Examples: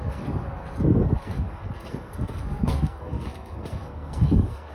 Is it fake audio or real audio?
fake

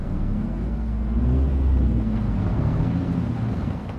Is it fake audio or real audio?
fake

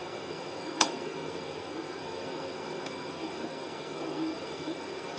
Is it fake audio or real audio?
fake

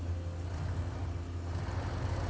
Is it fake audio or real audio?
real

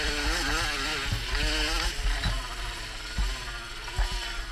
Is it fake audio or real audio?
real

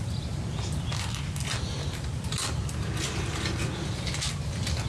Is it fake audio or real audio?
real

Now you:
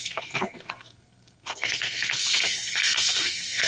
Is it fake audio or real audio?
fake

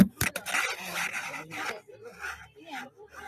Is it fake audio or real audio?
real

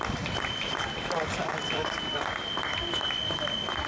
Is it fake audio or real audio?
real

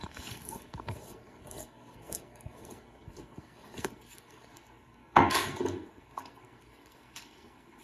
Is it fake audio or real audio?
fake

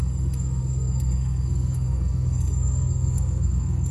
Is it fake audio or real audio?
fake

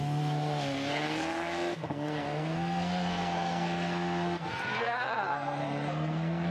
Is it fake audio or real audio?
fake